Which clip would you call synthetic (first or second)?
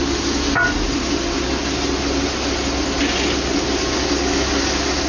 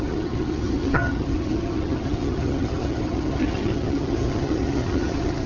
second